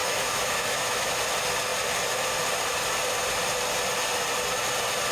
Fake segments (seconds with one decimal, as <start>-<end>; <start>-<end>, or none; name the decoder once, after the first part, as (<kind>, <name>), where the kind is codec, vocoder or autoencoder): 0.0-1.2 (autoencoder, DAC-VAE)